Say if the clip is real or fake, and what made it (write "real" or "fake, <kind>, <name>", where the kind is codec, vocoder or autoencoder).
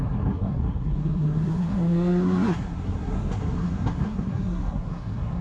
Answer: fake, codec, SNAC